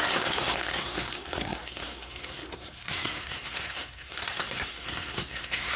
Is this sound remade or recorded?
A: remade